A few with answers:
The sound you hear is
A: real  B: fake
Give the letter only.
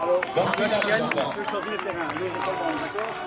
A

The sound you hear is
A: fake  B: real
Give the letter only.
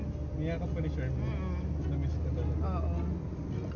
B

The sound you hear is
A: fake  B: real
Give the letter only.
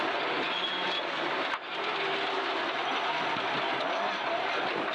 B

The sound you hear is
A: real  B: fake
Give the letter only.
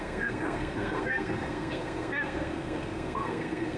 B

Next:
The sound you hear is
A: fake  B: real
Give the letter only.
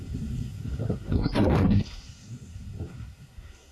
A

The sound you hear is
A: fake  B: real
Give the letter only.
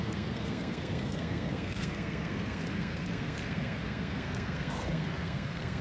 A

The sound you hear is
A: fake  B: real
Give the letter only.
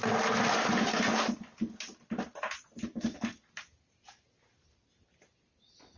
B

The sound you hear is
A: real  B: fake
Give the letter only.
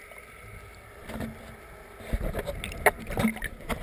A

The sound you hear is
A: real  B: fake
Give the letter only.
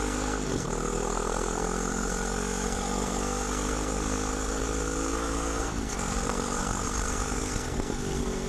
B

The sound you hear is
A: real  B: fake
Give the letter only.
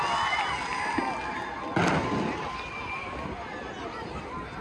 A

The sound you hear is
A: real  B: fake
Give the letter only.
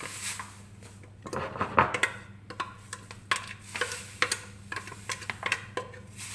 A